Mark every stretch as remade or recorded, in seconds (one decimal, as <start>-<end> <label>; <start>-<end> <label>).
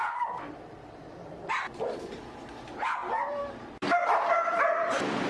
0.0-5.3 remade